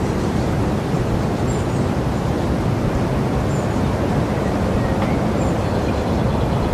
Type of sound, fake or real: real